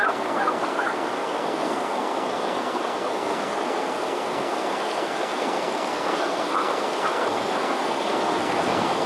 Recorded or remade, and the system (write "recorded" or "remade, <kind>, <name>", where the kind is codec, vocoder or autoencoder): remade, codec, SNAC